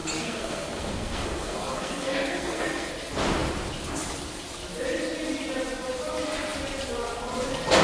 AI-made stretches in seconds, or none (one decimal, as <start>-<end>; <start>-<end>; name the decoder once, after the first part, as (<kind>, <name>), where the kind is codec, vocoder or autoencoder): 0.0-2.9 (codec, SNAC)